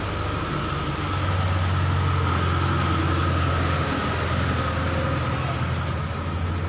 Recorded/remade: recorded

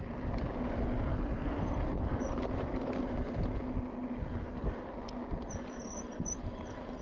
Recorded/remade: recorded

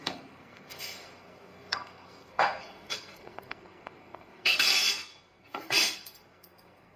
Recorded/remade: remade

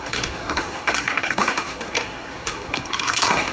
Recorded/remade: remade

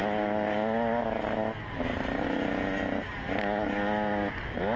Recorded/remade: recorded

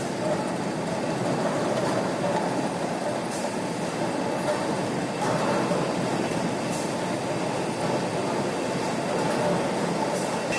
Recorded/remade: recorded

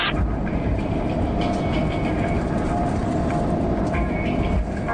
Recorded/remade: recorded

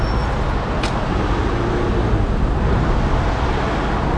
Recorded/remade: recorded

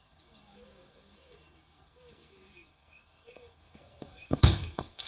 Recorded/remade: remade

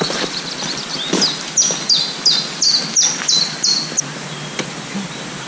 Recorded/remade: recorded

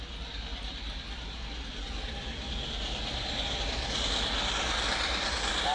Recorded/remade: recorded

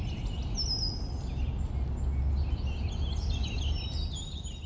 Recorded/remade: recorded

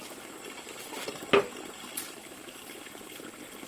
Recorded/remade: recorded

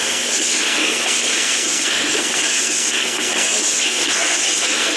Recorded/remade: remade